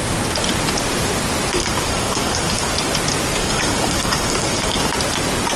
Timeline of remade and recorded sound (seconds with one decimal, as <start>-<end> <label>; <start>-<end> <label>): 0.0-1.6 recorded; 1.6-2.7 remade; 2.7-3.4 recorded; 3.4-4.9 remade; 4.9-5.6 recorded